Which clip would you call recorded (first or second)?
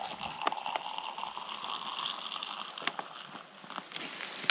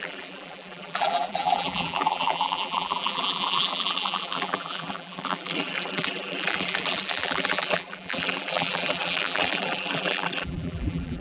first